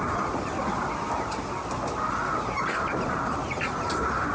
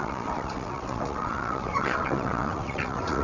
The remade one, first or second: second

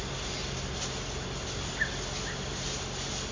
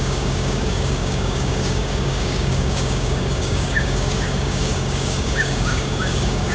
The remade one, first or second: second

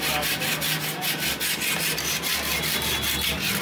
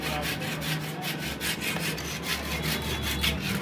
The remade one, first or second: first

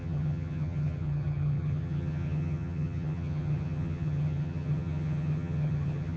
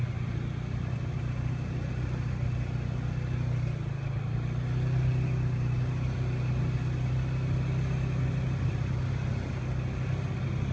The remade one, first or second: first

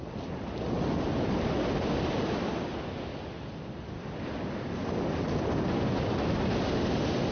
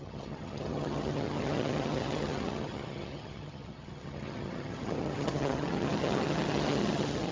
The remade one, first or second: second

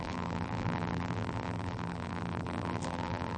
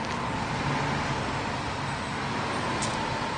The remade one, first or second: first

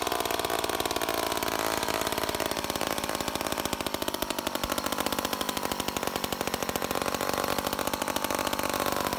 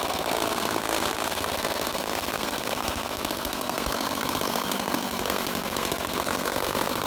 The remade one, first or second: second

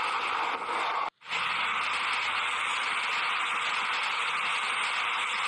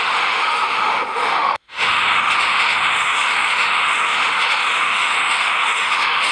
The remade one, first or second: second